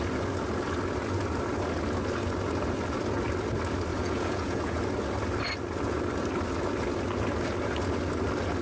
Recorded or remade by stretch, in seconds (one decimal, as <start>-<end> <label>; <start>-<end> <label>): 0.0-3.9 recorded; 3.9-4.8 remade; 4.8-8.6 recorded